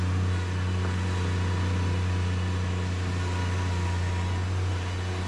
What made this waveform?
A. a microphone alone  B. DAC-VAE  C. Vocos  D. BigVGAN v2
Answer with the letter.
A